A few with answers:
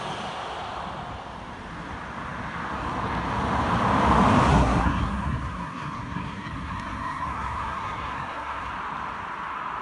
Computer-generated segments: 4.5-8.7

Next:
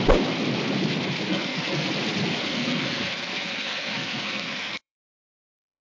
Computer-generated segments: 1.3-1.9; 2.4-5.8

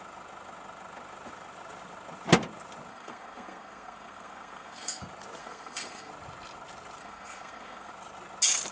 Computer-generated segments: 2.9-5.0; 5.4-6.1; 7.0-7.9

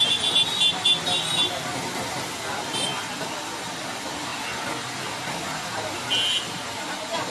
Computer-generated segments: none